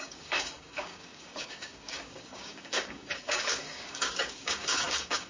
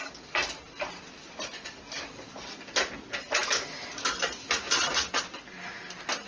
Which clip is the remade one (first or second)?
first